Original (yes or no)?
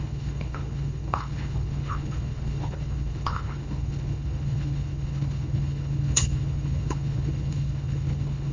no